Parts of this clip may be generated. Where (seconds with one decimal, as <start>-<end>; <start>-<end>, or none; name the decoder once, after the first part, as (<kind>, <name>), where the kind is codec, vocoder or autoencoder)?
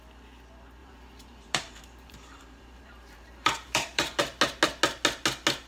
0.8-4.2 (vocoder, BigVGAN v2)